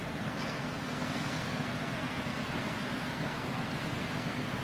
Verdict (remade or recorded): remade